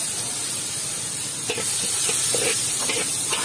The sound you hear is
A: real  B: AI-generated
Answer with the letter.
A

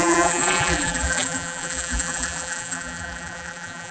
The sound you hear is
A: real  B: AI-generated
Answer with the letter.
B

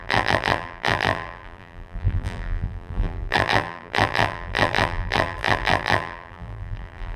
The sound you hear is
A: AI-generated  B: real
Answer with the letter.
A